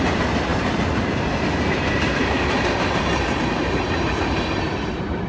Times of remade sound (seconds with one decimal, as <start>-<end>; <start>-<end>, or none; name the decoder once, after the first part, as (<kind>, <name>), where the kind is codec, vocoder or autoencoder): 0.0-5.3 (vocoder, BigVGAN v2)